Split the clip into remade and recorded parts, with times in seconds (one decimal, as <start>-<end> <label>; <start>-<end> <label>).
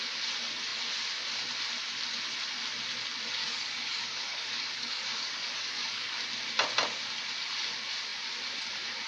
0.0-3.4 recorded; 3.4-6.2 remade; 6.2-9.1 recorded